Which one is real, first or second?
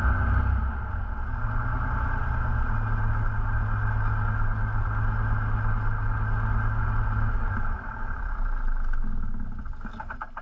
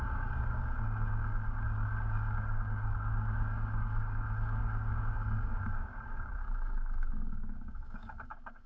first